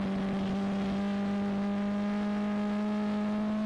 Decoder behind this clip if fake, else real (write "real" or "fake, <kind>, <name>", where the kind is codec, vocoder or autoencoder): real